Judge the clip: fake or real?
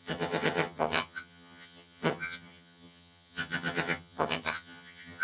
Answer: fake